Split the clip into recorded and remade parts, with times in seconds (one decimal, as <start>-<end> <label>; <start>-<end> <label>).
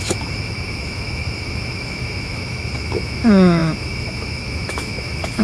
0.0-5.4 remade